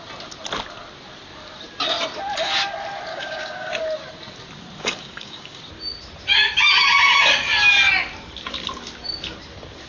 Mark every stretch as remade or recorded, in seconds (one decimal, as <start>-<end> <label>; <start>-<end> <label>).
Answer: 0.0-3.1 recorded; 3.1-3.7 remade; 3.7-4.8 recorded; 4.8-5.6 remade; 5.6-9.9 recorded